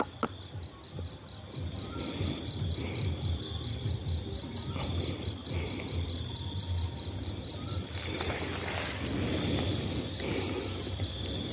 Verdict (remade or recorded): recorded